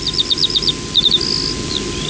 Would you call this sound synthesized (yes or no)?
no